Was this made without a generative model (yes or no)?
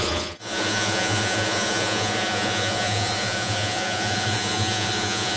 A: no